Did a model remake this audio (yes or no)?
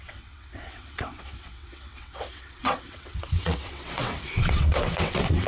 yes